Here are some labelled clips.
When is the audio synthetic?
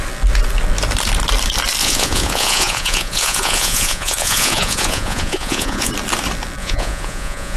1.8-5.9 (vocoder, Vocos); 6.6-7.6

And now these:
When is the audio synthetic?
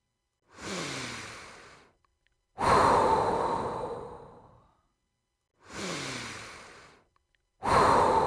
none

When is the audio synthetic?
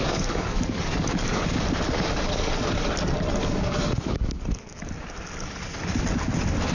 0.0-1.6 (codec, DAC); 3.4-4.9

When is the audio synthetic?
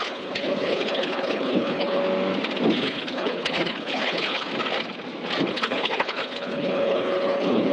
0.0-2.0 (codec, HILCodec); 2.7-4.5; 5.5-7.7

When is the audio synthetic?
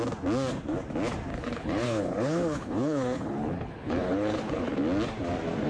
1.3-4.7 (codec, HILCodec)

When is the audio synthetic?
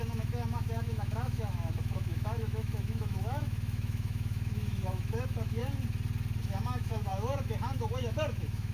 0.0-5.6 (autoencoder, DAC-VAE); 6.4-8.7